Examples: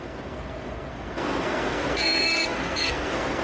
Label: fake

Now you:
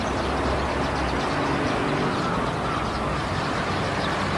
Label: real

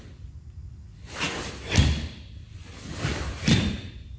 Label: real